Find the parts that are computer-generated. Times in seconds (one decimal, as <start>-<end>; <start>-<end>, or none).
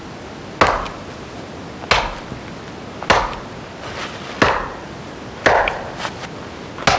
none